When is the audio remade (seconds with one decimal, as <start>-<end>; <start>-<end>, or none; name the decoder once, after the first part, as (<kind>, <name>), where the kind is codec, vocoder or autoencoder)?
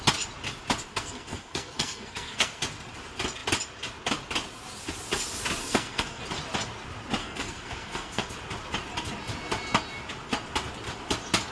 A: 0.9-2.6 (codec, SNAC); 5.6-6.2; 7.2-8.3